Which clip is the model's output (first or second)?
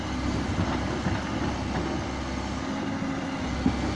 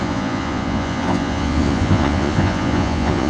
second